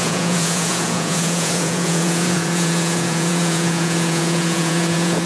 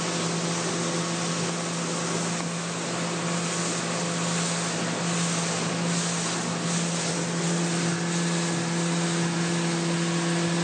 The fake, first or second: first